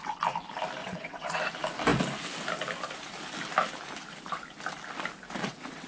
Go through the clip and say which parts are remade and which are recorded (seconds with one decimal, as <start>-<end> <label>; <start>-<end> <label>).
0.0-0.8 recorded; 0.8-1.4 remade; 1.4-5.4 recorded; 5.4-5.9 remade